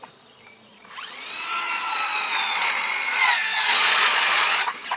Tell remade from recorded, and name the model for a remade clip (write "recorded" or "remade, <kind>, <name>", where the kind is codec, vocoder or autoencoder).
remade, vocoder, Vocos